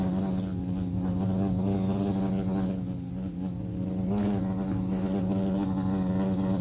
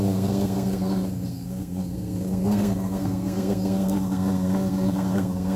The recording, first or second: first